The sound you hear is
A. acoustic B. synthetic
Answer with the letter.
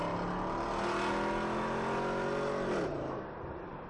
A